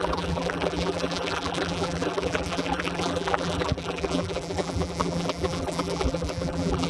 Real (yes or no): no